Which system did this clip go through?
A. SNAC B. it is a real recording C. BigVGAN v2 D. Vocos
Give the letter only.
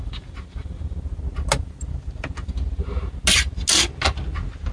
B